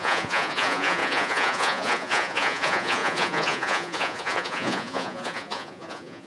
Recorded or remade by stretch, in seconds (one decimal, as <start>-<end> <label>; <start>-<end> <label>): 0.0-6.3 remade